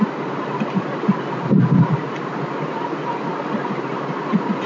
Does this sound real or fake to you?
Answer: real